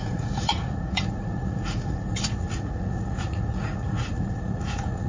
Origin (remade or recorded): remade